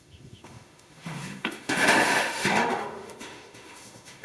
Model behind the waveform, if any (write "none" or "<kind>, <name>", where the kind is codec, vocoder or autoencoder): autoencoder, DAC-VAE